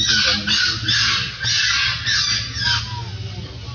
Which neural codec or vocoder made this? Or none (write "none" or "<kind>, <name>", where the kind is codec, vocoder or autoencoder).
none